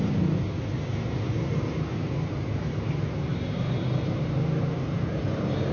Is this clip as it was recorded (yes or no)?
yes